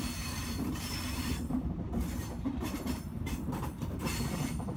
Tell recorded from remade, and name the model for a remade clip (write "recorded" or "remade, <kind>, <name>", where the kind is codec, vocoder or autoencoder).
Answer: remade, vocoder, BigVGAN v2